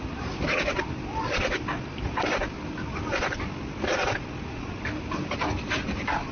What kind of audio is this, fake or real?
real